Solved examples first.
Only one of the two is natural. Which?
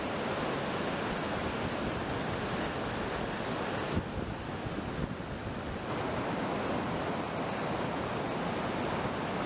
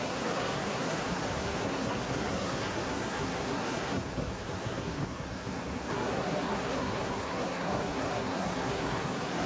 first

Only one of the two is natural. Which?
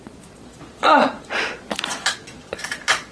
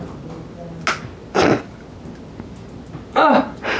second